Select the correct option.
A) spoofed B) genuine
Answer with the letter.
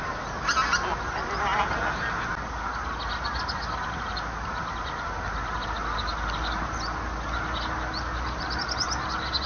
B